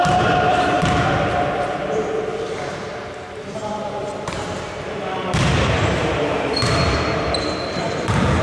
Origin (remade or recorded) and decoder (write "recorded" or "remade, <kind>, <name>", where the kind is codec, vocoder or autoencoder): remade, vocoder, BigVGAN v2